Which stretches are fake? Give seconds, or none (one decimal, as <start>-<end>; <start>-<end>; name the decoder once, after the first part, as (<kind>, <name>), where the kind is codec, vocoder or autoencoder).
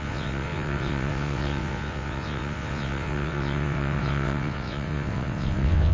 0.0-5.9 (vocoder, WaveNeXt)